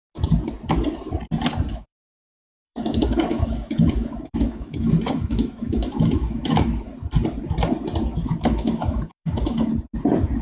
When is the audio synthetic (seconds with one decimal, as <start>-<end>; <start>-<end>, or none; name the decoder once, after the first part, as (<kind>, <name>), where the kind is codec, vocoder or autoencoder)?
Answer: 1.7-6.9 (autoencoder, DAC-VAE); 8.1-9.7